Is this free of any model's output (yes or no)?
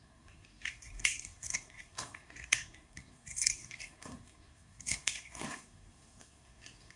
no